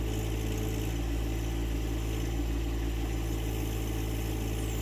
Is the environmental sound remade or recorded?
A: recorded